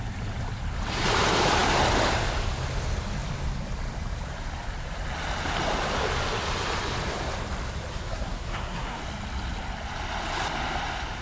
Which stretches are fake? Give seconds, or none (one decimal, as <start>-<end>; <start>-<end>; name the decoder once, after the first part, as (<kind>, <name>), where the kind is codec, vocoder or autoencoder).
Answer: 7.9-9.0 (codec, SNAC)